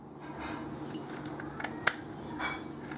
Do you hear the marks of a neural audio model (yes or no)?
no